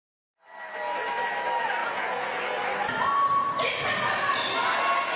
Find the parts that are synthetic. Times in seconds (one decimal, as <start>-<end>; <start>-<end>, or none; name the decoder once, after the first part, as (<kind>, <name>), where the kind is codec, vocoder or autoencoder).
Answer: 1.8-2.4 (vocoder, Vocos)